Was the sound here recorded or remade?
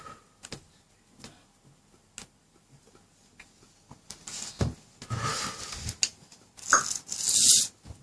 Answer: recorded